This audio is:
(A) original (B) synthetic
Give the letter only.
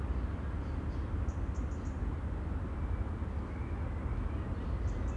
A